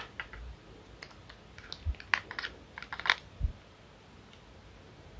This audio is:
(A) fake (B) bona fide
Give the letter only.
B